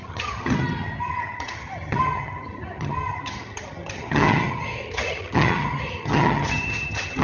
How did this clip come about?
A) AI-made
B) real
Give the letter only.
A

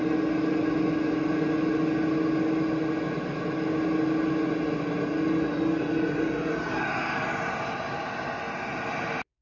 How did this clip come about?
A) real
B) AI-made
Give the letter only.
A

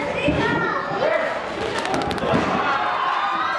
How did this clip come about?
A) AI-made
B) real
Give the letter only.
B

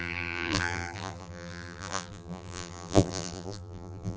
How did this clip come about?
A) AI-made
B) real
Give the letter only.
A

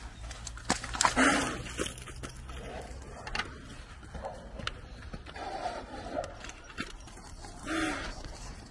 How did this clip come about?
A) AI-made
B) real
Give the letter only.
B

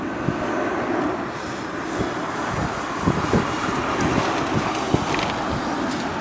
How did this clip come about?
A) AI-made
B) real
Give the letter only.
B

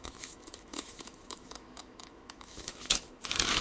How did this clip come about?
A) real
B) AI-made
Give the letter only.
B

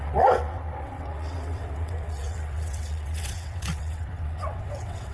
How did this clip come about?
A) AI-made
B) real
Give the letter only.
A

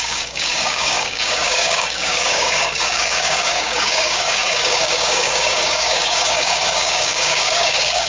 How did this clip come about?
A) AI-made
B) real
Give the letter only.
A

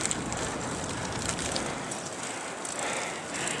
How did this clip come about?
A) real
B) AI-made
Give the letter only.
A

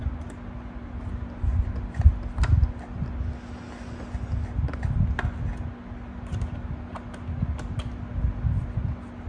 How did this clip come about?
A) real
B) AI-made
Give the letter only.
A